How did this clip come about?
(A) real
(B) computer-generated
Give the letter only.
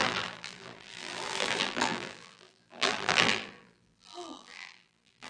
B